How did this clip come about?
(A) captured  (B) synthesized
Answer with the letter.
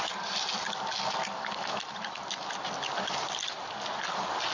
A